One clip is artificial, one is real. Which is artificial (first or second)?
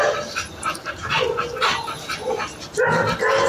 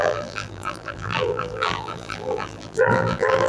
second